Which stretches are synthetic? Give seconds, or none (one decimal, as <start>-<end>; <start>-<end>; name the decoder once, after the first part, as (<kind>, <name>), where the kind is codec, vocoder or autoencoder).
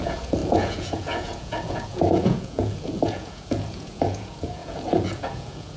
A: 0.0-5.8 (vocoder, Vocos)